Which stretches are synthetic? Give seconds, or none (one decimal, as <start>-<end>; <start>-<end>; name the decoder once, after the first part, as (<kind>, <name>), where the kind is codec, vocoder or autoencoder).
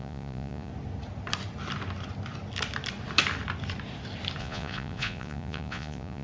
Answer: 0.0-0.7 (vocoder, Vocos); 4.4-6.2